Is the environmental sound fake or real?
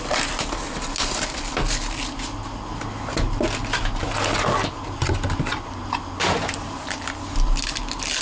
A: real